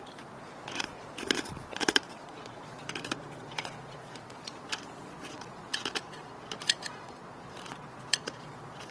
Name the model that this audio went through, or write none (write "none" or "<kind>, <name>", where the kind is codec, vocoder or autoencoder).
vocoder, Vocos